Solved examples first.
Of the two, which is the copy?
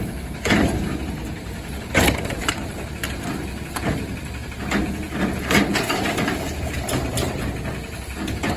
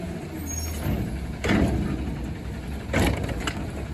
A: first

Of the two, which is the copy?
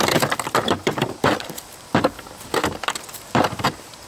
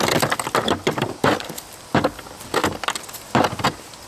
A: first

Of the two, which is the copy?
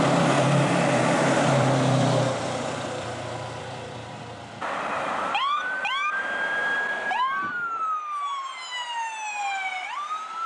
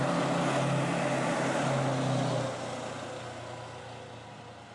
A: first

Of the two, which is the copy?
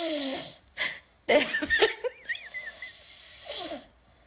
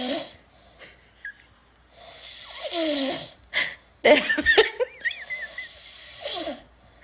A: first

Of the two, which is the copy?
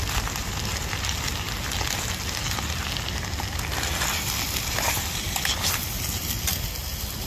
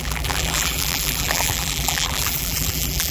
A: second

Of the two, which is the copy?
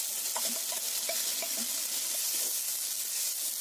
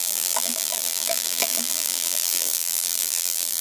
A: second